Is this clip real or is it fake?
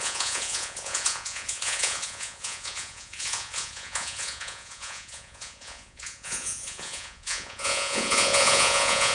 fake